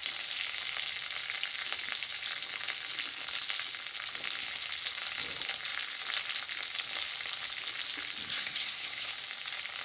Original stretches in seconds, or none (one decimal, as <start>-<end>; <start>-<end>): 0.0-8.3; 9.1-9.8